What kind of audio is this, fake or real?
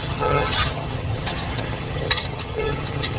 fake